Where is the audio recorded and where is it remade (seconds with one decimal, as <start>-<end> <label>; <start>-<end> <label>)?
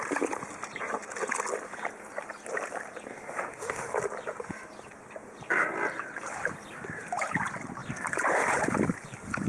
0.0-3.1 recorded; 3.1-3.9 remade; 3.9-9.5 recorded